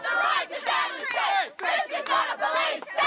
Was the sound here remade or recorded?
recorded